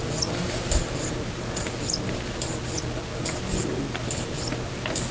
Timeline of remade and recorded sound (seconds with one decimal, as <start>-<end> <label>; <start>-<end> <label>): 0.0-5.1 recorded